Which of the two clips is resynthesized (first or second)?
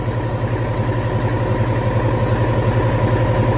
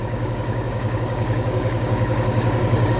second